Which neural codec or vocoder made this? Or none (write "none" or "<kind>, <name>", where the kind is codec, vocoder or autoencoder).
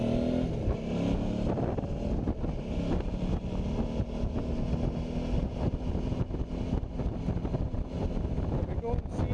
none